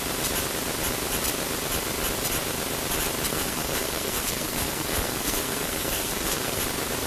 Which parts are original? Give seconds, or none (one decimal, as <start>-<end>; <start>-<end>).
0.0-3.3; 6.6-7.1